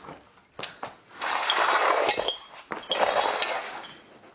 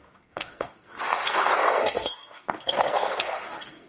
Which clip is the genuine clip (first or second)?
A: first